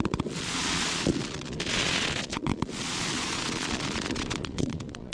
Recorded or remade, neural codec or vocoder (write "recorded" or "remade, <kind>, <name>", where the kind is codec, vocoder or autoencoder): remade, vocoder, Vocos